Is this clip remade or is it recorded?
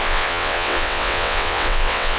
remade